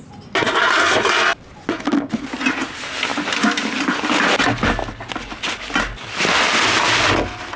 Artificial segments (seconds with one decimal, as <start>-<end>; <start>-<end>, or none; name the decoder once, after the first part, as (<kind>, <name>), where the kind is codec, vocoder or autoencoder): none

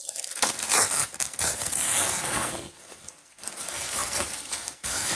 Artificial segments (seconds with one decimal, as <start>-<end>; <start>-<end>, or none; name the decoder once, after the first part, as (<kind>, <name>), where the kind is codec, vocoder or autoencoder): 0.0-5.2 (codec, SNAC)

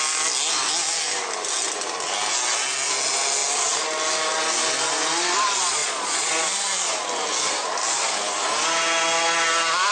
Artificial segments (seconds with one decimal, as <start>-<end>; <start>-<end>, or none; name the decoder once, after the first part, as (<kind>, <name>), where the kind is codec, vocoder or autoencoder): 5.8-6.3 (vocoder, Vocos)

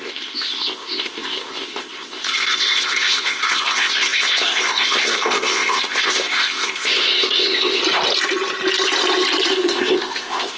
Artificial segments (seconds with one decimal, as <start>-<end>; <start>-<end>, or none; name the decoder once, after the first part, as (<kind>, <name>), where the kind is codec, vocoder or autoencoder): 0.0-7.8 (codec, ZipCodec); 9.5-10.6

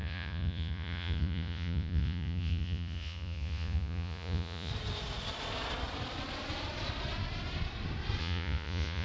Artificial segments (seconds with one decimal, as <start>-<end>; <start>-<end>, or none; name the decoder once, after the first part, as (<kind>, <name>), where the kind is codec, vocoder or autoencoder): 0.0-4.7 (vocoder, Vocos); 8.2-9.0

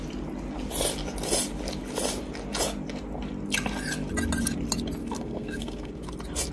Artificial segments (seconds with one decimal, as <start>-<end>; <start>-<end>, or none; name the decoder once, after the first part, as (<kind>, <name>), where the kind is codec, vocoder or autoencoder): 5.0-5.9 (codec, SNAC)